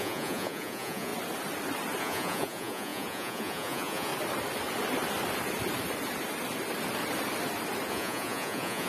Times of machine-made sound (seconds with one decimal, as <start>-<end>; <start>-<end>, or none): 0.0-1.1; 2.0-4.1; 7.9-8.9